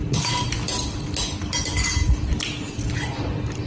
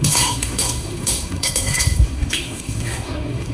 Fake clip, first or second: second